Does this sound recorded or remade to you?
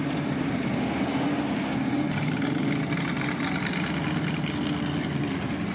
recorded